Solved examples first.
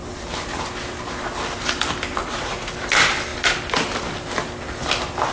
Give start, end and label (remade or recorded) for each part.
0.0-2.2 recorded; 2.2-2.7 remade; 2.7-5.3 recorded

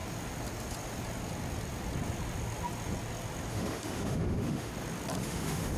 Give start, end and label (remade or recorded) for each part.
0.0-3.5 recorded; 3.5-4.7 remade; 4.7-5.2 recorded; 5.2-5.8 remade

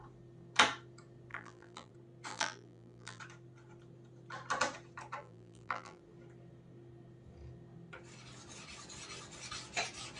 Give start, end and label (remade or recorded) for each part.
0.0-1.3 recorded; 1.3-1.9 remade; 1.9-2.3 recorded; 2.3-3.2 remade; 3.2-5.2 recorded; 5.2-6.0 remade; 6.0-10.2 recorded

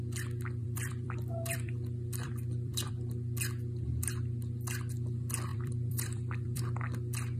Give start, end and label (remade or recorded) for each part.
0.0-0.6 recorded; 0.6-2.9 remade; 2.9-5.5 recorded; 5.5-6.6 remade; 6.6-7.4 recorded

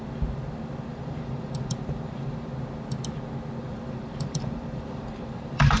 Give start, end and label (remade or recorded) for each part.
0.0-0.9 recorded; 0.9-2.5 remade; 2.5-3.6 recorded; 3.6-5.8 remade

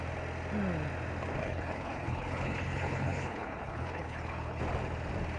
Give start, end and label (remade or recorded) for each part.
0.0-1.4 recorded; 1.4-4.6 remade; 4.6-5.4 recorded